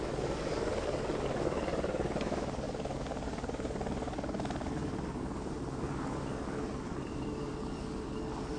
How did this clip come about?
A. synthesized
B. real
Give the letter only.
A